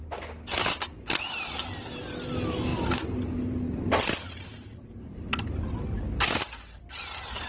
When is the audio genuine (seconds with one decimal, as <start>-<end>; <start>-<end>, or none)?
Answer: 0.0-7.5